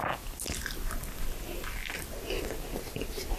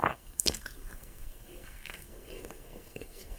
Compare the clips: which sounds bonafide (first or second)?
first